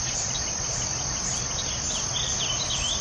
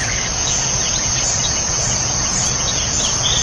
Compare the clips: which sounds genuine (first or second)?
first